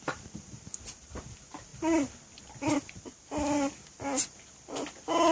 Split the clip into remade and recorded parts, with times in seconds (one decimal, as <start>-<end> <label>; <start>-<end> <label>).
0.0-5.3 recorded